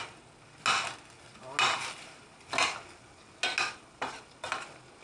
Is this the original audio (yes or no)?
yes